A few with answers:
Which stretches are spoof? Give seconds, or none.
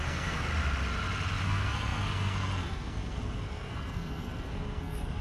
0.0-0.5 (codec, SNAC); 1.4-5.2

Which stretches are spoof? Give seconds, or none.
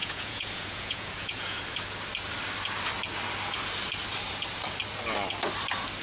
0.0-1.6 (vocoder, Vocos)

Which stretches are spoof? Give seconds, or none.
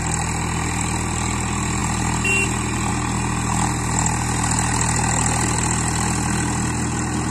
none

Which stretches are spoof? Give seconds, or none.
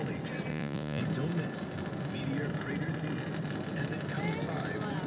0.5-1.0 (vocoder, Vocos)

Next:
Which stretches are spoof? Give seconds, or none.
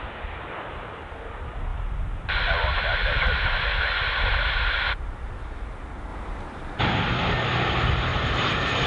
6.1-6.8 (vocoder, BigVGAN v2); 8.1-8.9